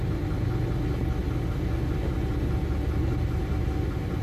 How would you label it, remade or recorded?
recorded